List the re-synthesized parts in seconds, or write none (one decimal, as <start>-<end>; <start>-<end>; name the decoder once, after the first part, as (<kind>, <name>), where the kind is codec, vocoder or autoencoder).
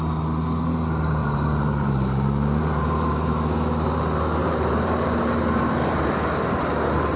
1.2-3.3 (vocoder, BigVGAN v2); 4.4-6.1